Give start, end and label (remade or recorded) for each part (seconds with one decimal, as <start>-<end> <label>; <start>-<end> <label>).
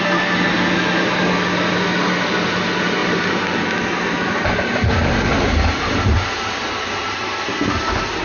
0.0-3.0 recorded; 3.0-7.5 remade; 7.5-8.2 recorded